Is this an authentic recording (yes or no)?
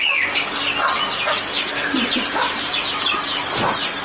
yes